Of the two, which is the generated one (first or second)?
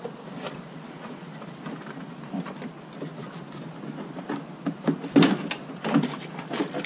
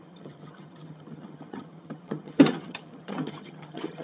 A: second